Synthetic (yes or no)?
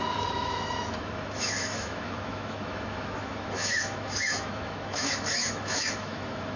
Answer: yes